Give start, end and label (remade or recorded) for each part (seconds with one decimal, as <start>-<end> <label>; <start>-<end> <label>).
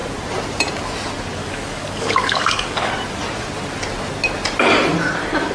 0.0-1.4 recorded; 1.4-2.9 remade; 2.9-5.5 recorded